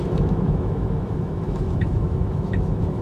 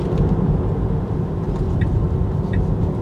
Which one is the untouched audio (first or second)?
second